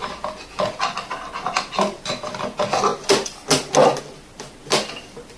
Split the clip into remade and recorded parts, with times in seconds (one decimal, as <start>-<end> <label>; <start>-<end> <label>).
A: 0.0-5.4 recorded

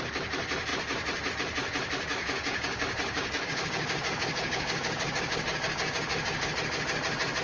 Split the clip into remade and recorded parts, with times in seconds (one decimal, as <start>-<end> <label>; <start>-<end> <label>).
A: 0.0-2.1 recorded; 2.1-6.5 remade; 6.5-7.4 recorded

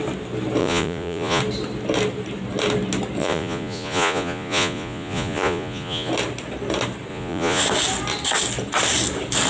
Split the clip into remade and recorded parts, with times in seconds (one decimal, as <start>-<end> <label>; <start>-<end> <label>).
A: 0.0-0.6 recorded; 0.6-1.4 remade; 1.4-3.2 recorded; 3.2-6.1 remade; 6.1-7.1 recorded; 7.1-7.6 remade; 7.6-9.5 recorded

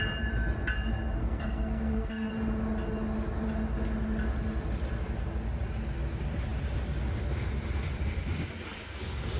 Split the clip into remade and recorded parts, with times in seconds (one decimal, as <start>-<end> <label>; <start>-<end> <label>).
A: 0.0-1.2 recorded; 1.2-2.3 remade; 2.3-9.4 recorded

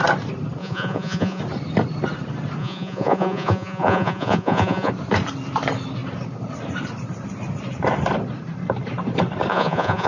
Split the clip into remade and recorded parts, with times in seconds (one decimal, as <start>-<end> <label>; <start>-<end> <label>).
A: 0.0-0.6 recorded; 0.6-1.4 remade; 1.4-2.6 recorded; 2.6-4.9 remade; 4.9-9.5 recorded; 9.5-10.1 remade

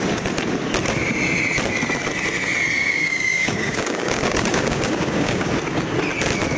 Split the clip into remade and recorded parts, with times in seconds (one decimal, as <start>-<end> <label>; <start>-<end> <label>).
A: 0.0-2.8 recorded; 2.8-5.5 remade; 5.5-6.6 recorded

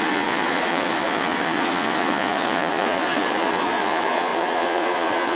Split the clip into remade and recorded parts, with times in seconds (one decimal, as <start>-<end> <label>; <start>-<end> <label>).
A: 0.0-5.4 remade

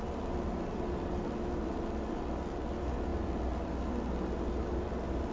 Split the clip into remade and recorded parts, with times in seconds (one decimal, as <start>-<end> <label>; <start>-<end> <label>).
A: 0.0-5.3 recorded